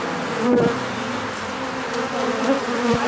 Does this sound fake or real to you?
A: real